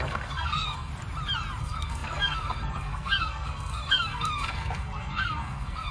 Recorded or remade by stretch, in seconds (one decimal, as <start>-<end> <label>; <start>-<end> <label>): 0.0-0.9 remade; 0.9-1.6 recorded; 1.6-5.9 remade

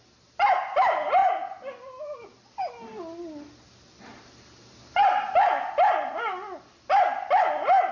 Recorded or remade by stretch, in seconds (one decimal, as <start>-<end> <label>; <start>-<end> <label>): 0.0-7.9 recorded

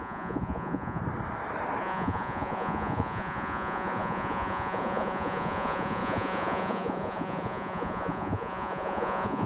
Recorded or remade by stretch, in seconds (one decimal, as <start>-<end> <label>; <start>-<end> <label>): 0.0-1.0 remade; 1.0-1.8 recorded; 1.8-9.5 remade

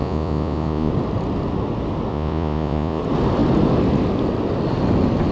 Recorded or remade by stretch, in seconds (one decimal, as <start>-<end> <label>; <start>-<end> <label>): 0.0-0.9 remade; 0.9-2.1 recorded; 2.1-3.0 remade; 3.0-5.3 recorded

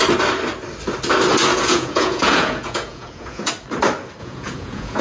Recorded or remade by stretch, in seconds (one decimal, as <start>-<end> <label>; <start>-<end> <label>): 0.0-1.5 recorded; 1.5-3.5 remade; 3.5-4.2 recorded; 4.2-5.0 remade

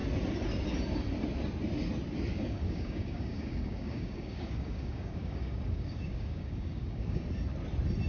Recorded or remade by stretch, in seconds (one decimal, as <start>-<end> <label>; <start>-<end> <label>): 0.0-2.3 recorded; 2.3-7.2 remade; 7.2-8.1 recorded